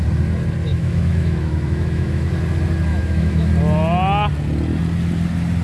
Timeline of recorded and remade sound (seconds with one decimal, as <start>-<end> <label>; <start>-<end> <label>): 0.0-0.7 recorded; 0.7-2.3 remade; 2.3-2.9 recorded; 2.9-3.5 remade; 3.5-5.6 recorded